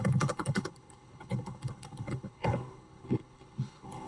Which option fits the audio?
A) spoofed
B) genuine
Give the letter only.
A